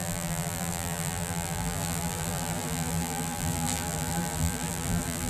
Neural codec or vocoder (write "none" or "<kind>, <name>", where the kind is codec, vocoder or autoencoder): vocoder, BigVGAN v2